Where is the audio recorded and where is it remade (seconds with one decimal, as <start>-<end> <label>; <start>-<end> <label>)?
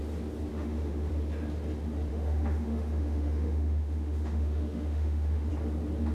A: 0.0-0.5 recorded; 0.5-1.1 remade; 1.1-2.1 recorded; 2.1-5.5 remade; 5.5-6.1 recorded